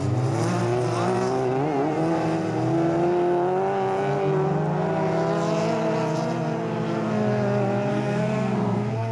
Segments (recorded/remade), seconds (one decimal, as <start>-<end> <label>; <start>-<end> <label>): 0.0-7.9 recorded; 7.9-9.1 remade